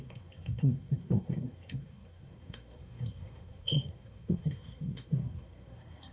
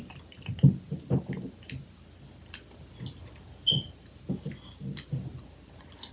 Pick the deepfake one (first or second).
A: first